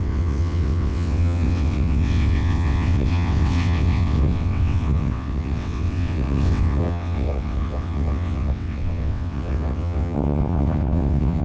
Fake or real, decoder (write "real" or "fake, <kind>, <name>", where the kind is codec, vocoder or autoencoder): fake, vocoder, WaveNeXt